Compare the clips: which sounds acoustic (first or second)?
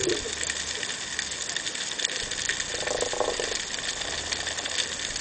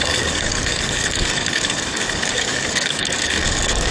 first